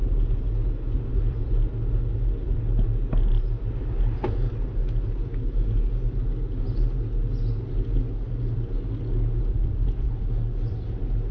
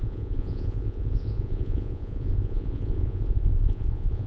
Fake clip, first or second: second